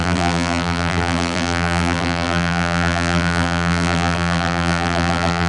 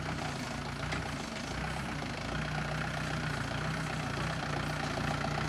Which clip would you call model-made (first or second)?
first